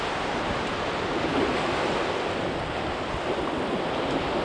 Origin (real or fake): real